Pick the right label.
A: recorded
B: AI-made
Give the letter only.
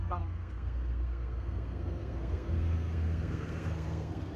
B